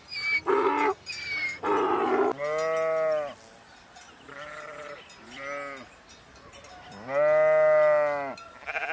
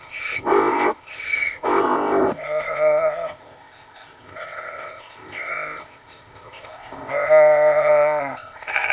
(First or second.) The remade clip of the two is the second